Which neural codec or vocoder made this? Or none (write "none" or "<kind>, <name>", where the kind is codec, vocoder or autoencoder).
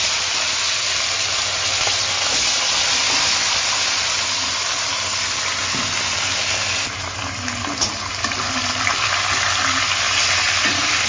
none